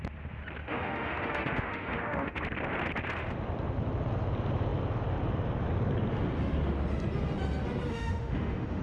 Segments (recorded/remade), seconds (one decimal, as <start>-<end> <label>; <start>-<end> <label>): 0.0-0.6 recorded; 0.6-2.4 remade; 2.4-7.9 recorded; 7.9-8.8 remade